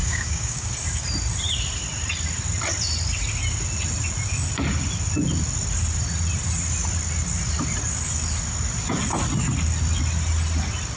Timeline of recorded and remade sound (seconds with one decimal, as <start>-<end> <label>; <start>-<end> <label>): 0.0-0.7 remade; 0.7-11.0 recorded